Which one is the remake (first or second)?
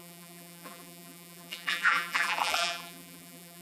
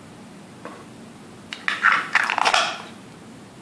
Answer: first